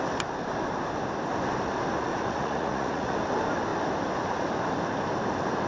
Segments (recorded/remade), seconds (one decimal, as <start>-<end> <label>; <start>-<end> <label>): 0.0-2.1 recorded; 2.1-3.2 remade; 3.2-5.7 recorded

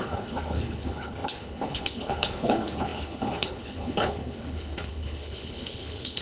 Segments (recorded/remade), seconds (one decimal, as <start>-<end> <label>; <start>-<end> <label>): 0.0-6.2 remade

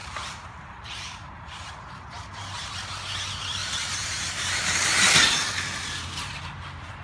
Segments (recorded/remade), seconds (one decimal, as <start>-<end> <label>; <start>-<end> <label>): 0.0-1.7 remade; 1.7-3.6 recorded; 3.6-5.1 remade; 5.1-7.0 recorded

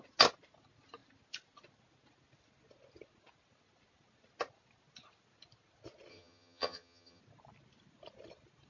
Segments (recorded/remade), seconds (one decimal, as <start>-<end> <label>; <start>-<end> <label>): 0.0-6.1 recorded; 6.1-7.2 remade; 7.2-8.7 recorded

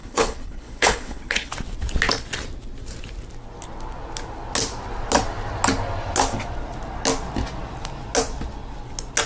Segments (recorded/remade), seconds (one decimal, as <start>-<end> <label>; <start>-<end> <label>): 0.0-1.5 remade; 1.5-9.3 recorded